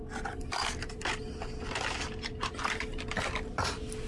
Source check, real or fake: real